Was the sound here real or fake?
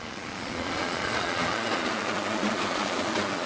fake